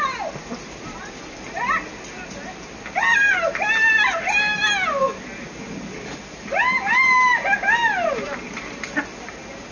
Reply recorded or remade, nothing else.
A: recorded